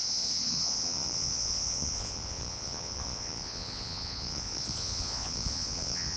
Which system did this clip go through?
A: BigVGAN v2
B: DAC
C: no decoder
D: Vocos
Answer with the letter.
D